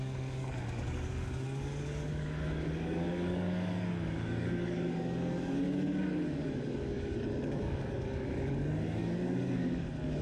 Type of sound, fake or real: fake